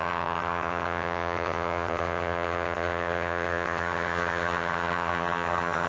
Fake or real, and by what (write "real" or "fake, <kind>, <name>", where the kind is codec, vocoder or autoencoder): fake, vocoder, HiFi-GAN